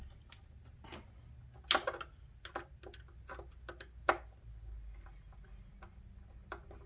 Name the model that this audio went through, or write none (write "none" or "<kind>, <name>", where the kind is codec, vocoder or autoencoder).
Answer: none